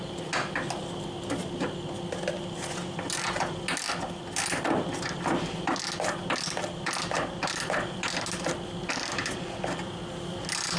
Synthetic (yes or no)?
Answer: no